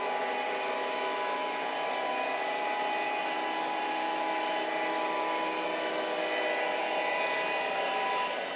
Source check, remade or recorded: recorded